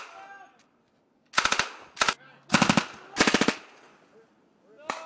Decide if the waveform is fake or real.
real